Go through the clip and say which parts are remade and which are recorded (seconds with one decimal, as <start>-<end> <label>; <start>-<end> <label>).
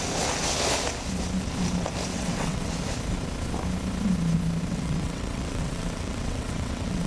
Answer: 0.0-2.1 recorded; 2.1-2.7 remade; 2.7-4.7 recorded; 4.7-7.1 remade